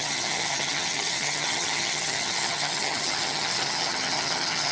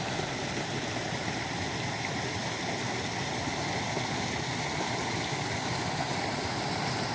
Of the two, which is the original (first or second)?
second